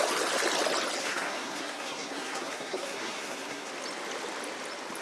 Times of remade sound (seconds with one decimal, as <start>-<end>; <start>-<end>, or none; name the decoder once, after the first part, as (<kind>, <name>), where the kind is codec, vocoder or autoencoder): 1.0-3.7 (codec, SNAC)